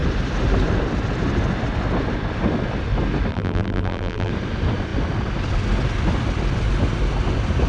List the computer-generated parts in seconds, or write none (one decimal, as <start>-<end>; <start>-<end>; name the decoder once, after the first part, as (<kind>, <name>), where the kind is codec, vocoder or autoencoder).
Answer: 3.3-4.3 (vocoder, BigVGAN v2)